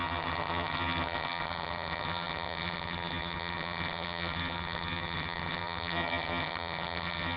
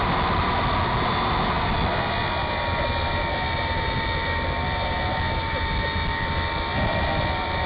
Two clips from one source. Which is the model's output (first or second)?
first